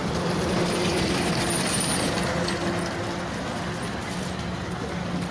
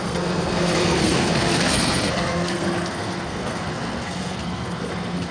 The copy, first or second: second